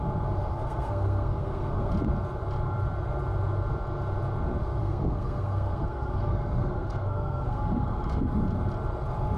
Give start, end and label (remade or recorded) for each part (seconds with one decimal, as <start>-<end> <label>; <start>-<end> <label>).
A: 0.0-0.5 recorded; 0.5-1.9 remade; 1.9-4.8 recorded; 4.8-8.4 remade; 8.4-9.4 recorded